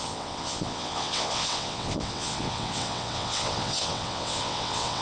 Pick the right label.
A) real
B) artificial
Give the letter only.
B